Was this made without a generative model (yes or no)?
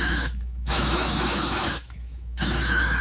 no